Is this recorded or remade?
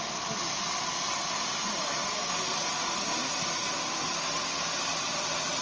recorded